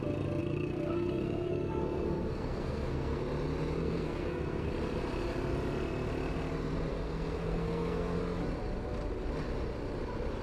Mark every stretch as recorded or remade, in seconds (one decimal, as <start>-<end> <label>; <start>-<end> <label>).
0.0-0.4 recorded; 0.4-3.2 remade; 3.2-3.8 recorded; 3.8-4.7 remade; 4.7-6.9 recorded; 6.9-8.2 remade; 8.2-10.4 recorded